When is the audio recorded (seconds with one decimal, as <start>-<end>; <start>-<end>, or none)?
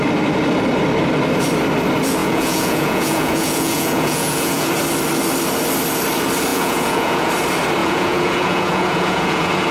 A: 0.0-2.2; 4.7-6.5; 7.3-7.8